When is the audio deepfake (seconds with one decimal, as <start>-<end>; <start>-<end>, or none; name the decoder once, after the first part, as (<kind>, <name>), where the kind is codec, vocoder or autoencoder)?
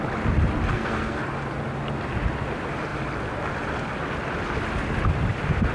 0.7-1.2 (codec, SNAC)